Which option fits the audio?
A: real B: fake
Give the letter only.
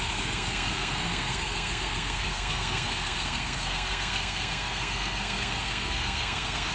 B